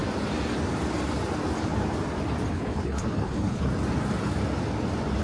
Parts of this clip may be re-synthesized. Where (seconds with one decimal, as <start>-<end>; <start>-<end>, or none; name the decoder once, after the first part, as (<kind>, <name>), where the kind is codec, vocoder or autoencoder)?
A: 2.5-3.7 (codec, HILCodec)